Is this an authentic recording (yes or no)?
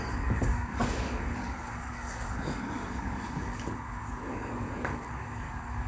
no